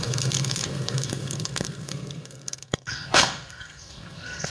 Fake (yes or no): yes